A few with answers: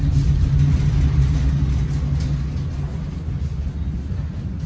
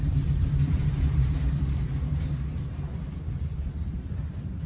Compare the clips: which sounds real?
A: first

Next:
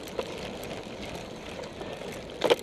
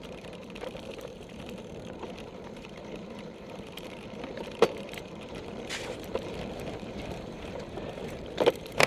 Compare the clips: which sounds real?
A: first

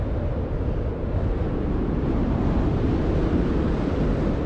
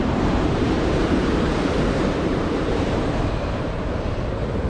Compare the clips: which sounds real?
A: first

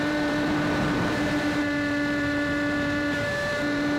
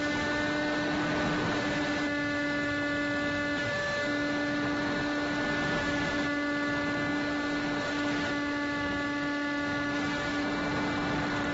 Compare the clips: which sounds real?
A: second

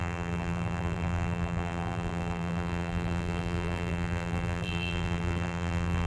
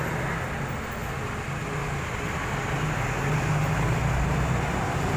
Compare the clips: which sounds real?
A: second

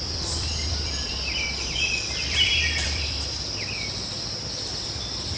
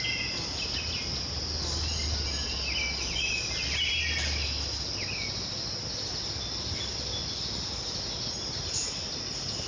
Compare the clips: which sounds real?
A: second